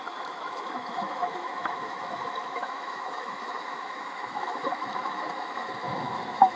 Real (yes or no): no